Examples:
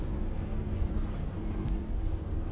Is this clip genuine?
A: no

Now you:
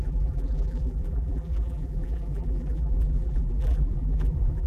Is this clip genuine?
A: no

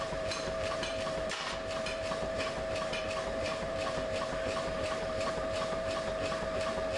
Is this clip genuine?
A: no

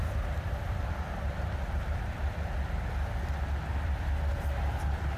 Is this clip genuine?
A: no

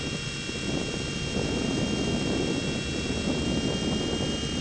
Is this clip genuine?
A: yes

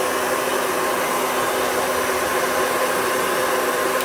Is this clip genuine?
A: yes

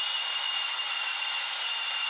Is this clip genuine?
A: yes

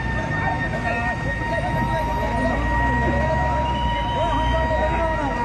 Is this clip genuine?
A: yes